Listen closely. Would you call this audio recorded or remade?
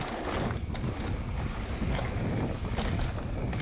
recorded